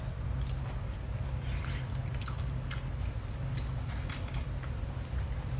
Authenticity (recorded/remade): recorded